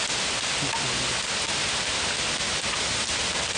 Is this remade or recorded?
recorded